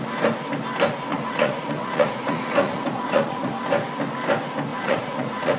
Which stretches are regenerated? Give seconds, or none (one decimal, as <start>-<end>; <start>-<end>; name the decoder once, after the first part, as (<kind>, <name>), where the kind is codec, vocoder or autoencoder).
1.1-3.5 (vocoder, Vocos); 4.7-5.6